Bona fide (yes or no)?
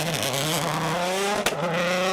yes